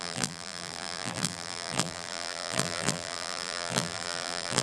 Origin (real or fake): fake